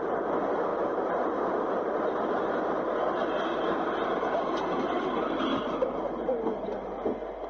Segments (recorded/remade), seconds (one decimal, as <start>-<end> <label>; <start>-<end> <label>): 0.0-7.5 recorded